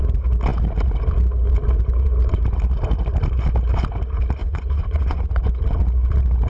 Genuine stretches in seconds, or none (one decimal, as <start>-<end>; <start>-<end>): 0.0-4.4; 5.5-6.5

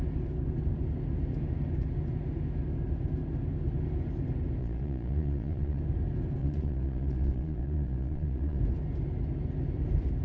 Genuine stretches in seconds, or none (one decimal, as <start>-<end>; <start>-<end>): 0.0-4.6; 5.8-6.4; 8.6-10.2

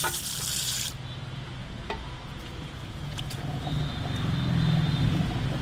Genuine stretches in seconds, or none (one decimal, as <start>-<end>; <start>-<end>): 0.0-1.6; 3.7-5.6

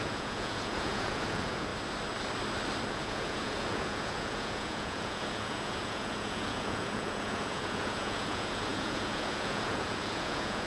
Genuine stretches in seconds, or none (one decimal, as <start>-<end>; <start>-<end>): 1.7-2.9

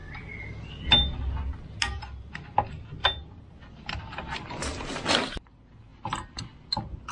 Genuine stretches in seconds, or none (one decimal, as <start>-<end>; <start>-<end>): 0.0-7.1

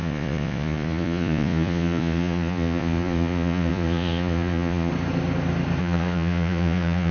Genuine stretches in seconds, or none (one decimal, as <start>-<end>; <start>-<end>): 4.9-5.8

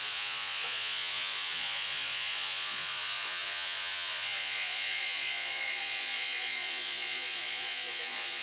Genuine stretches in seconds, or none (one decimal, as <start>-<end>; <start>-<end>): none